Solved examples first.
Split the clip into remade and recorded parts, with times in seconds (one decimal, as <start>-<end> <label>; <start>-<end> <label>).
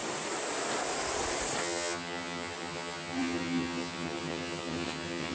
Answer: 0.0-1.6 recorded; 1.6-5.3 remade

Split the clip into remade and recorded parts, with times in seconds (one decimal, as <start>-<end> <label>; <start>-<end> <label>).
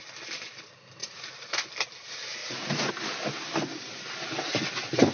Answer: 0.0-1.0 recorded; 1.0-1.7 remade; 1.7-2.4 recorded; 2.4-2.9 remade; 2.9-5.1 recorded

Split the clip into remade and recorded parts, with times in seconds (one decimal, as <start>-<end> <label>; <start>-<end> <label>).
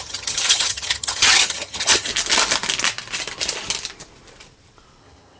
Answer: 0.0-2.1 remade; 2.1-5.0 recorded; 5.0-5.4 remade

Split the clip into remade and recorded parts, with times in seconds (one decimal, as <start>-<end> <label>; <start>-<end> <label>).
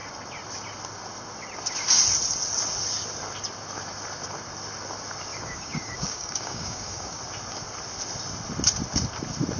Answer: 0.0-5.3 recorded; 5.3-7.2 remade; 7.2-9.6 recorded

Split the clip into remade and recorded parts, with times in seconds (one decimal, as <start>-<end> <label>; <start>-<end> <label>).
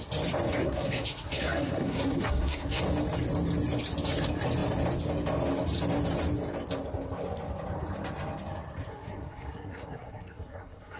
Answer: 0.0-0.6 recorded; 0.6-2.8 remade; 2.8-8.9 recorded; 8.9-11.0 remade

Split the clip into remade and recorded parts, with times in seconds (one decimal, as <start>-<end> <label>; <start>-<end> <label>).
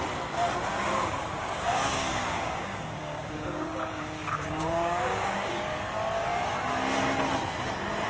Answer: 0.0-0.7 recorded; 0.7-5.6 remade; 5.6-8.1 recorded